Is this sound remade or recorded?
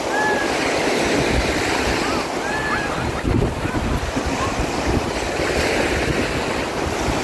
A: recorded